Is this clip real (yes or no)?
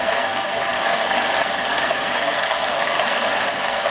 no